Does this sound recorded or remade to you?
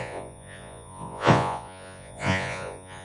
remade